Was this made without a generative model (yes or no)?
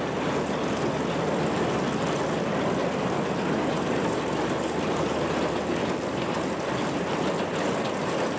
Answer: yes